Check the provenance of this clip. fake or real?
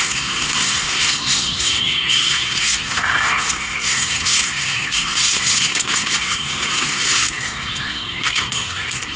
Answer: fake